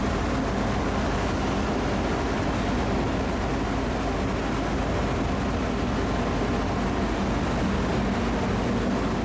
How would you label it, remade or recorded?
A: recorded